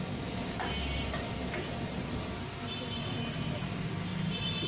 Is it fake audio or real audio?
real